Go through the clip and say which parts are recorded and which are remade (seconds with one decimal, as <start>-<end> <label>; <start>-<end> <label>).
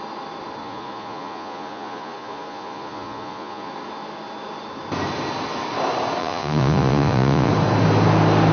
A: 0.0-0.6 recorded; 0.6-3.7 remade; 3.7-6.2 recorded; 6.2-7.5 remade; 7.5-8.5 recorded